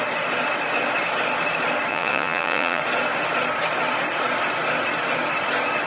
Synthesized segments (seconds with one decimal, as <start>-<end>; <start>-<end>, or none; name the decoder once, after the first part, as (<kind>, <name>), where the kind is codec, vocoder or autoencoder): 1.9-2.8 (vocoder, Vocos)

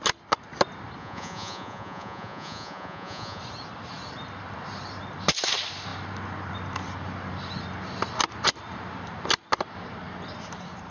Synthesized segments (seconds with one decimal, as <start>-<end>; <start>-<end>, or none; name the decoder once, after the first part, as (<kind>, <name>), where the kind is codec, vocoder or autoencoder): 1.0-3.4 (vocoder, Vocos)